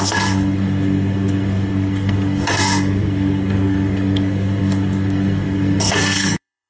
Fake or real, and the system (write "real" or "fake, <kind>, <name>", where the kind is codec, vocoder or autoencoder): fake, codec, SNAC